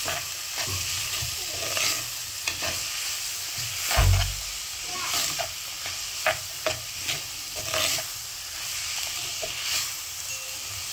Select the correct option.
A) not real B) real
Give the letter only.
B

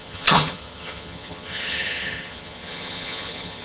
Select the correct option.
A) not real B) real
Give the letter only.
A